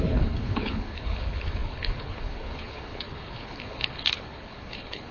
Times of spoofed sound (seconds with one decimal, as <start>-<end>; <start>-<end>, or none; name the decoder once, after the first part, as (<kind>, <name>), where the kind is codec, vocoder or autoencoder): 0.0-5.1 (codec, HILCodec)